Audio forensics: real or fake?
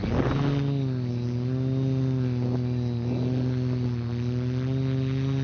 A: real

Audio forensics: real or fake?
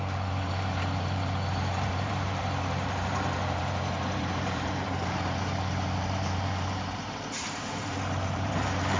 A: fake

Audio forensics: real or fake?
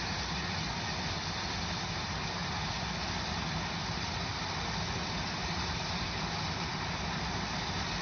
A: real